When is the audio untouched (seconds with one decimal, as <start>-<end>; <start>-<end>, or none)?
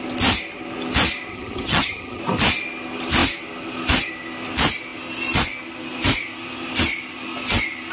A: 0.0-1.3; 2.2-7.9